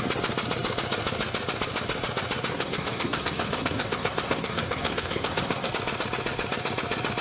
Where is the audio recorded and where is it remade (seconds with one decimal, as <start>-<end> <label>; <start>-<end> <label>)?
0.0-2.5 recorded; 2.5-5.7 remade; 5.7-7.2 recorded